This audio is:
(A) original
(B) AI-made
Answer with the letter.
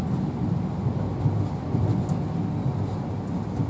A